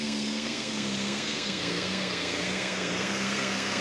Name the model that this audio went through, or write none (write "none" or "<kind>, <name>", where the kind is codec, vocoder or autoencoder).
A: codec, SNAC